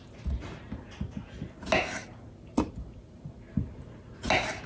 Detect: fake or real real